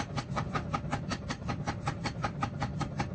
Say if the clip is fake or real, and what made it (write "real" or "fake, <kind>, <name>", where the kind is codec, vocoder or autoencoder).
fake, vocoder, BigVGAN v2